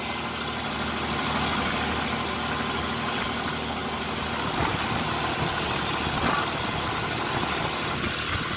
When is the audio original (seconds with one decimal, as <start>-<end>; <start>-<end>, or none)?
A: 0.0-8.6